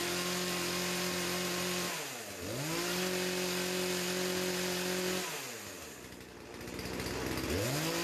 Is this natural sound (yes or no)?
yes